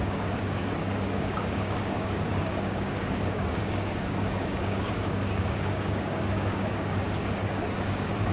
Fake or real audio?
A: fake